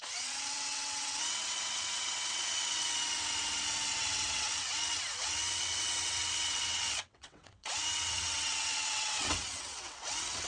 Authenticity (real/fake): fake